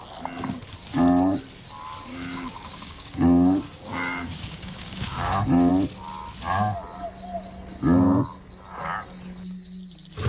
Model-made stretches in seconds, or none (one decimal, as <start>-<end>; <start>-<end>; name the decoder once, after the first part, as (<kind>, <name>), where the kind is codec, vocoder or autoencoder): 2.1-5.7 (codec, DAC)